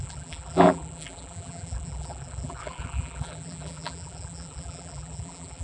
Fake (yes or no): yes